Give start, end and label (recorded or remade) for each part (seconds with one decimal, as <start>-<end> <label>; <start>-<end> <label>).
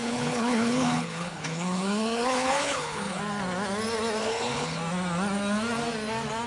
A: 0.0-3.2 remade; 3.2-4.2 recorded; 4.2-4.8 remade; 4.8-6.5 recorded